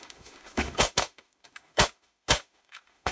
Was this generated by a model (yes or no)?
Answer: yes